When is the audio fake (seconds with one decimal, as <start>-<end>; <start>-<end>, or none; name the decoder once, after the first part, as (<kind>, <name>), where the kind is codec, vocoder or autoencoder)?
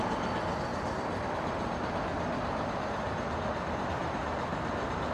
none